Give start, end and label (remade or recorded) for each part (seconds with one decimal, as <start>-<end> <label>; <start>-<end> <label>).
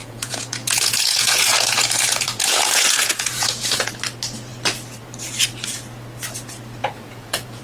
0.0-3.9 remade; 3.9-6.8 recorded; 6.8-7.6 remade